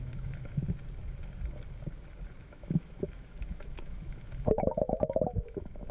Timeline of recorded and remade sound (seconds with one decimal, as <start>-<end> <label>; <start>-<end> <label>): 0.0-0.6 remade; 0.6-2.4 recorded; 2.4-5.9 remade